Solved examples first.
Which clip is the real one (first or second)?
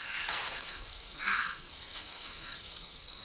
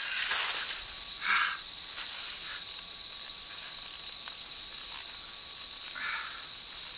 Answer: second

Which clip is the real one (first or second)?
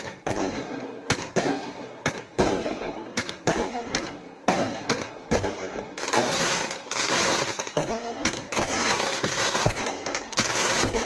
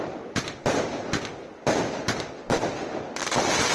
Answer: second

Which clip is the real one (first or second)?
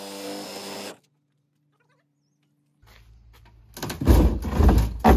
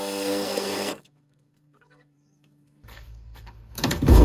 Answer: first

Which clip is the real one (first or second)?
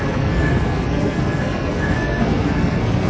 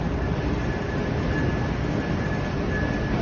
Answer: second